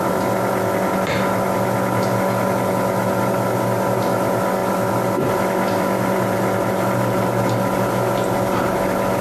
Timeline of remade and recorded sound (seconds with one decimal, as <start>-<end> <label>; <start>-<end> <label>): 0.0-9.2 recorded